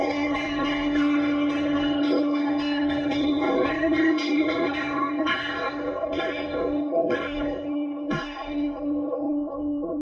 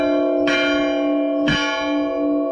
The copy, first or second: first